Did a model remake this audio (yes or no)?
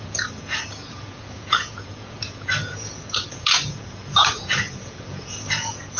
yes